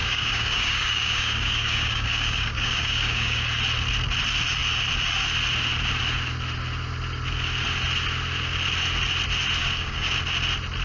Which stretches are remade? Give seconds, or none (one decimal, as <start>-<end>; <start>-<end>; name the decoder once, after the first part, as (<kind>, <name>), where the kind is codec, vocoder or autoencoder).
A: 0.0-3.4 (codec, DAC); 9.6-10.1